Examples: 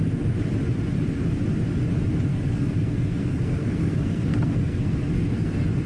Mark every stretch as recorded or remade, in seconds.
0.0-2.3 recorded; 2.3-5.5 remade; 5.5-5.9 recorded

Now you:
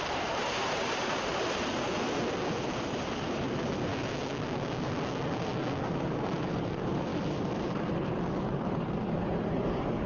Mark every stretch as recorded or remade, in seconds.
0.0-1.3 remade; 1.3-2.5 recorded; 2.5-3.9 remade; 3.9-5.8 recorded; 5.8-10.1 remade

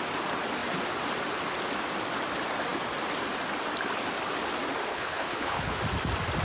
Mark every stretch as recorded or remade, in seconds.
0.0-4.9 recorded; 4.9-5.8 remade; 5.8-6.4 recorded

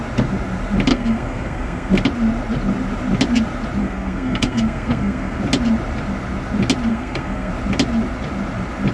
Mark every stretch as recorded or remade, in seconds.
0.0-0.9 recorded; 0.9-1.9 remade; 1.9-3.8 recorded; 3.8-5.4 remade; 5.4-6.9 recorded; 6.9-7.5 remade; 7.5-8.9 recorded

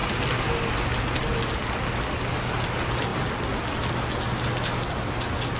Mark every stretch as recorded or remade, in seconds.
0.0-5.6 recorded

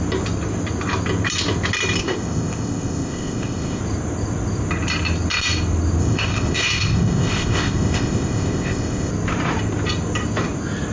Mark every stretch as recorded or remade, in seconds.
0.0-2.0 recorded; 2.0-3.8 remade; 3.8-6.0 recorded; 6.0-9.1 remade; 9.1-10.9 recorded